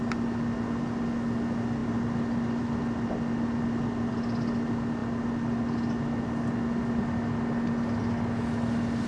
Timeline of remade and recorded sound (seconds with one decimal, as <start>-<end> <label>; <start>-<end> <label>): 0.0-9.1 recorded